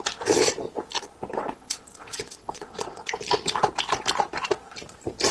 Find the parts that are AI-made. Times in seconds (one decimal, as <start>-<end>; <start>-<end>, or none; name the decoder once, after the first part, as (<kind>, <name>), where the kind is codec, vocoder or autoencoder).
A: 1.3-3.0 (vocoder, WaveNeXt)